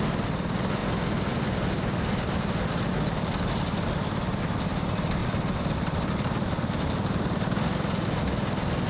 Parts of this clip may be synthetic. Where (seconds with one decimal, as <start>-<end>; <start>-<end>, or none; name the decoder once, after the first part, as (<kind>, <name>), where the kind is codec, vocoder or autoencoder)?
0.8-3.3 (vocoder, BigVGAN v2); 5.2-6.9